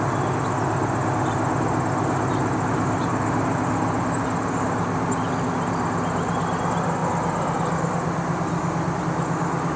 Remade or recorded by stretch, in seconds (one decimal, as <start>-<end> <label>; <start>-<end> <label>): 0.0-9.8 recorded